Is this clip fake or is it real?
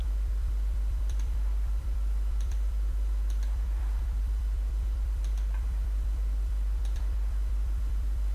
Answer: fake